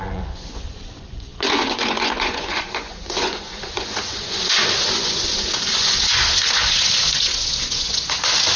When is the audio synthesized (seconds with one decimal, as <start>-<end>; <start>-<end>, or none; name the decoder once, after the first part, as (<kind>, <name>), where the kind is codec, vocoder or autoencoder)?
0.0-8.6 (vocoder, Vocos)